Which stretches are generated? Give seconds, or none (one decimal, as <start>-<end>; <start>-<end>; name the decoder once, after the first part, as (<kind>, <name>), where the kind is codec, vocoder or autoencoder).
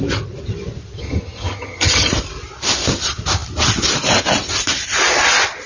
1.0-2.1 (vocoder, HiFi-GAN)